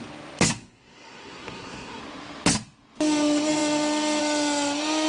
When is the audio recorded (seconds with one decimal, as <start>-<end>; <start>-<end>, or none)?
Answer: 0.0-0.6; 2.0-5.1